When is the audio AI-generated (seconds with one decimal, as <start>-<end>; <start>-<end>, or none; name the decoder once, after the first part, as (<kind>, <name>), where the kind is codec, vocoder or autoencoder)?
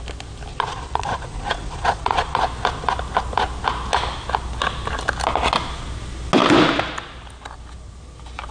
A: 0.5-2.4 (vocoder, Vocos)